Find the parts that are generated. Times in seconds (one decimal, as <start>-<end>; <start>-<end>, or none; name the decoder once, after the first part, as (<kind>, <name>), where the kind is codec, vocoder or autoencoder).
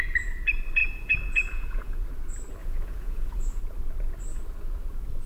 0.8-2.0 (vocoder, Vocos); 2.6-3.6